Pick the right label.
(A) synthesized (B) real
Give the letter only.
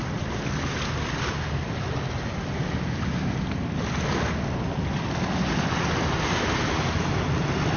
B